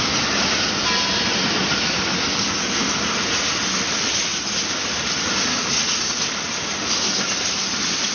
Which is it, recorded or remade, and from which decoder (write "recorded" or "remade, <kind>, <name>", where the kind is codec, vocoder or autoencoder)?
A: recorded